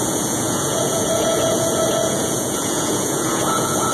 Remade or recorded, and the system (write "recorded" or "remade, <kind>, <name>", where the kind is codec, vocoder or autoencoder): remade, vocoder, Vocos